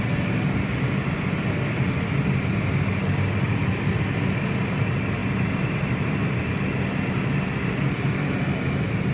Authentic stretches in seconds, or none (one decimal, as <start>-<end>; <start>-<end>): 0.0-9.1